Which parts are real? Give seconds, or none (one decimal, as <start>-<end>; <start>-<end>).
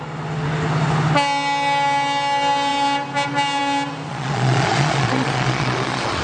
0.0-4.1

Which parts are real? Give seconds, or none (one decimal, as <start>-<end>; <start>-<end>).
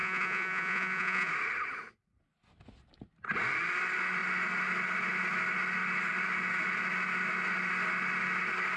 1.3-8.8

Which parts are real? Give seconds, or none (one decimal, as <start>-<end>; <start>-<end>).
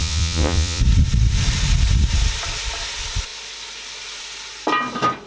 0.8-5.3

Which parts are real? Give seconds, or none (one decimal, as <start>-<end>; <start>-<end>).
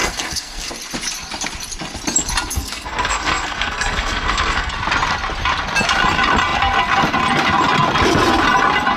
0.7-2.5; 4.7-9.0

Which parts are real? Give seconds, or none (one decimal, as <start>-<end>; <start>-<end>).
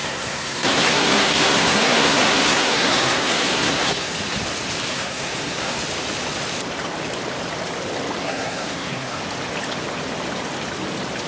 4.1-4.9; 5.8-8.2; 9.2-11.3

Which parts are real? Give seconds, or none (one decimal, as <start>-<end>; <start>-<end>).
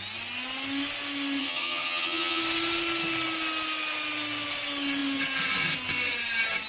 0.0-1.4; 2.4-6.7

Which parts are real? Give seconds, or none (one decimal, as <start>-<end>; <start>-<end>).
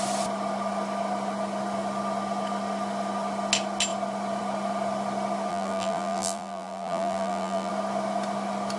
0.0-5.5; 7.7-8.8